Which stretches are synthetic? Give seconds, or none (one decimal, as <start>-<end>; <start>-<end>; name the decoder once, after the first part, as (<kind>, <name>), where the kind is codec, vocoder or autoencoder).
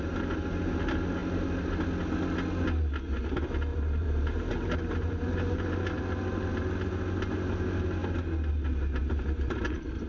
3.7-6.0 (vocoder, BigVGAN v2); 9.0-10.1